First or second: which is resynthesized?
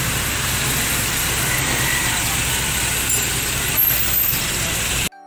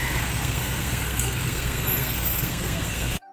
second